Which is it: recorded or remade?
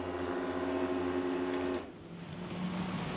recorded